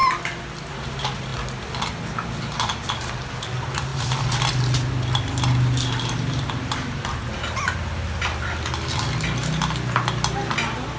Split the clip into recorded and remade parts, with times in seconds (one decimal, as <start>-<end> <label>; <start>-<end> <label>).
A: 0.0-11.0 recorded